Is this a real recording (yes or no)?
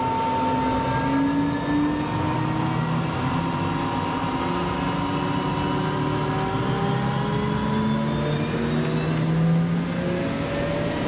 yes